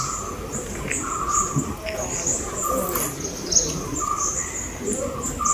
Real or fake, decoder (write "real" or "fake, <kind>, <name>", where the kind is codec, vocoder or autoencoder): real